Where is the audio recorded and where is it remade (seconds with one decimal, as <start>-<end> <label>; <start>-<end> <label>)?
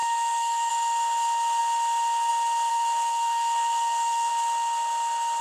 0.0-0.7 remade; 0.7-2.7 recorded; 2.7-4.3 remade; 4.3-5.4 recorded